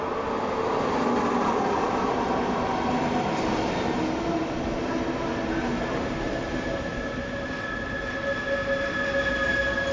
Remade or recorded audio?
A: recorded